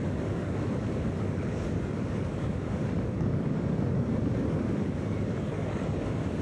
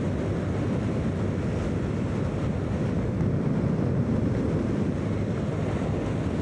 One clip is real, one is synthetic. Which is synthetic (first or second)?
first